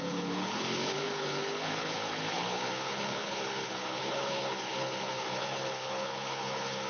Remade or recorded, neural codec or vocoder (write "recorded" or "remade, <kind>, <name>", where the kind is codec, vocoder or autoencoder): remade, codec, HILCodec